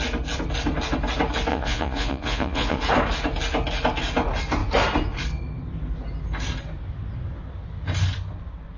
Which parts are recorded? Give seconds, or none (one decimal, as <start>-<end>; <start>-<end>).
0.0-1.5; 2.8-8.8